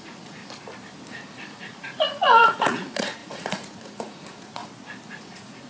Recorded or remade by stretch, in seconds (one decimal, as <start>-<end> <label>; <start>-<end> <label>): 0.0-0.4 remade; 0.4-1.6 recorded; 1.6-4.6 remade; 4.6-5.1 recorded; 5.1-5.7 remade